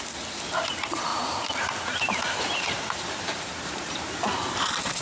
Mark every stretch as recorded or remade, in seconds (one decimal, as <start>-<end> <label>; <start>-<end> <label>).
0.0-1.1 recorded; 1.1-4.1 remade; 4.1-5.0 recorded